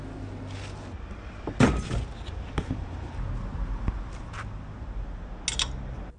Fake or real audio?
real